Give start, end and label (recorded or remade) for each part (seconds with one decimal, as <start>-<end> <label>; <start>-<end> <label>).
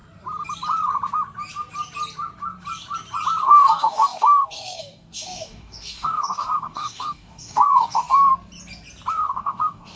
0.0-3.4 recorded; 3.4-8.3 remade; 8.3-9.1 recorded; 9.1-10.0 remade